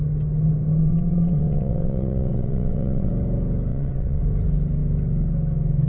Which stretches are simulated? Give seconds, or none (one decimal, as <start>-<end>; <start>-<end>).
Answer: 0.8-3.1; 3.7-4.2